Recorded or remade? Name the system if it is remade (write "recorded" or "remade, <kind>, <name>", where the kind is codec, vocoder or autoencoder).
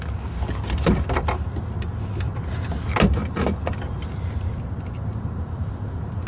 recorded